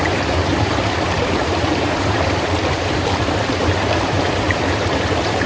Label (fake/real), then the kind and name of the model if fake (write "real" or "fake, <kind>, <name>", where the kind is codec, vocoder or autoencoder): fake, vocoder, BigVGAN v2